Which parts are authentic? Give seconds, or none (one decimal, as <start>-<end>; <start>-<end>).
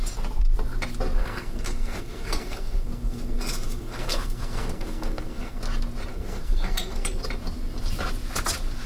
0.0-1.2; 5.6-6.1; 7.2-8.9